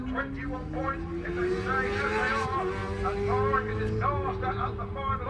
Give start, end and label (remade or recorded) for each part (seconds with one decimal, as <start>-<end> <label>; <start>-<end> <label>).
0.0-5.3 recorded